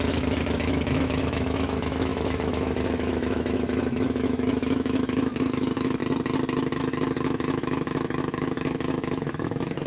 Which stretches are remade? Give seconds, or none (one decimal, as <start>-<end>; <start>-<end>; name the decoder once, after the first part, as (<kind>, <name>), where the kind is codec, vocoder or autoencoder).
0.0-6.0 (autoencoder, DAC-VAE); 6.8-9.9